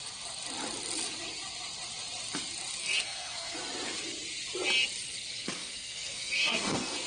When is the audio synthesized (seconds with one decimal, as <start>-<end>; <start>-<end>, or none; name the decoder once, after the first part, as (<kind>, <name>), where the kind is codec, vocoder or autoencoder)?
2.8-3.5 (codec, SNAC); 5.6-7.1